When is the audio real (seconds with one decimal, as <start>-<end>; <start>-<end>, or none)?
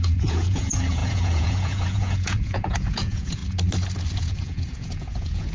3.4-4.2